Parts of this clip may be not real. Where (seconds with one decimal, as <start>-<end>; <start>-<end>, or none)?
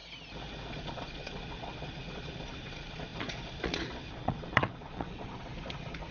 0.7-6.1